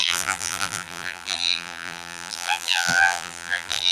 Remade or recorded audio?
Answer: remade